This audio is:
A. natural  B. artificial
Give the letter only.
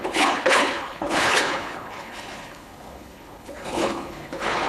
B